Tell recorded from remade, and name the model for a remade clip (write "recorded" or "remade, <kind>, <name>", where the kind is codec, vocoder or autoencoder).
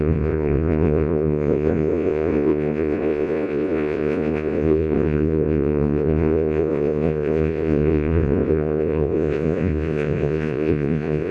remade, vocoder, Vocos